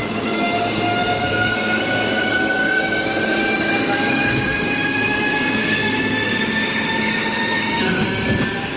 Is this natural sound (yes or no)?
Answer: no